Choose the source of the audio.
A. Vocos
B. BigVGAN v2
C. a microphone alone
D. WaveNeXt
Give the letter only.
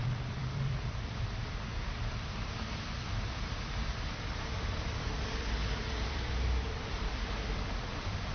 B